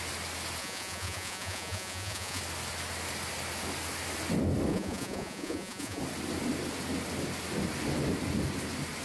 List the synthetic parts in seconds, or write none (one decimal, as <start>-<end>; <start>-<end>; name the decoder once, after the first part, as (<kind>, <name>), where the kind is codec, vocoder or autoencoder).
0.6-2.4 (vocoder, Vocos); 4.7-6.0